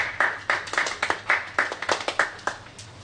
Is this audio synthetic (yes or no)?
no